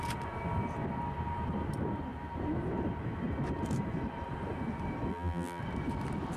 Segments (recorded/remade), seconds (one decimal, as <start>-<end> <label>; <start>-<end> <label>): 0.0-5.1 recorded; 5.1-5.6 remade; 5.6-6.4 recorded